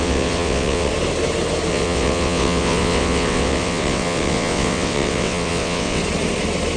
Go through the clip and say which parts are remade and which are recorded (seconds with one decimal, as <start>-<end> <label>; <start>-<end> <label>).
0.0-0.9 remade; 0.9-1.7 recorded; 1.7-6.0 remade; 6.0-6.8 recorded